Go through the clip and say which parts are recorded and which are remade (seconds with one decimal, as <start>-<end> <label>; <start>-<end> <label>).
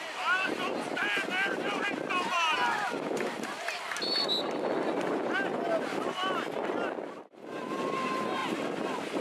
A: 0.0-9.2 recorded